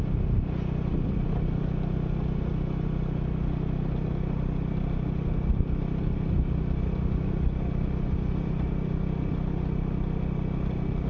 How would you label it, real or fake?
real